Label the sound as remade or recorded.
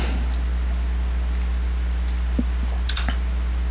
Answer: recorded